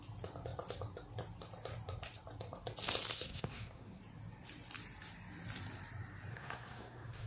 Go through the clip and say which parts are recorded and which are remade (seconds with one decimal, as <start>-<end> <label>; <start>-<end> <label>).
0.0-3.1 recorded; 3.1-4.0 remade; 4.0-6.3 recorded; 6.3-7.3 remade